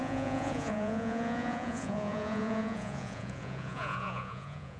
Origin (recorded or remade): remade